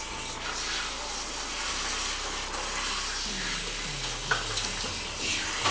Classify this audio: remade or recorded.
recorded